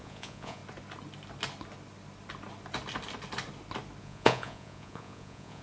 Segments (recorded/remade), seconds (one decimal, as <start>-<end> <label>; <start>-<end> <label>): 0.0-0.6 remade; 0.6-4.0 recorded; 4.0-5.6 remade

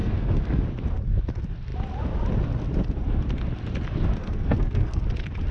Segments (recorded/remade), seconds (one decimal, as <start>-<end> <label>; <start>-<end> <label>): 0.0-0.6 remade; 0.6-4.2 recorded; 4.2-5.0 remade; 5.0-5.5 recorded